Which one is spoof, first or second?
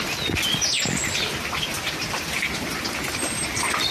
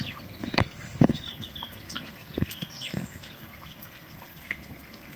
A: second